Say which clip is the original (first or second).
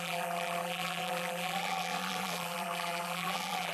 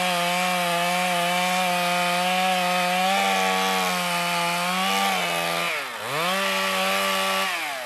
second